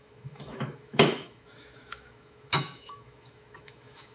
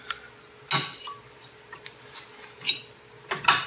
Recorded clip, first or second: second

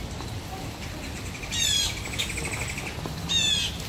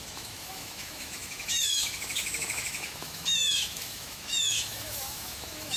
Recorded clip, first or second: first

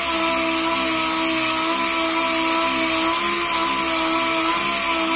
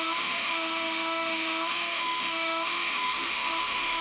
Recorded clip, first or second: first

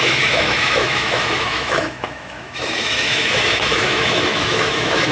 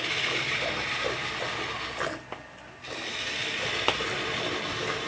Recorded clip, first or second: second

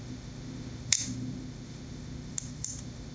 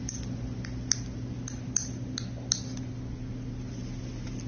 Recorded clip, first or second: second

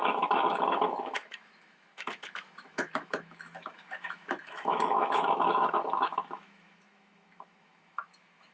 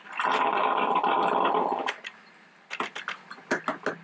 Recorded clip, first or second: second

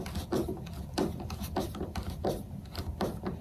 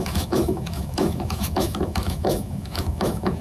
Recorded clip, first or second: first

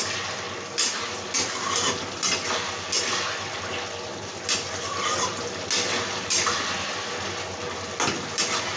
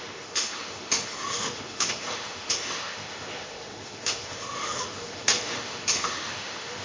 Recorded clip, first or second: first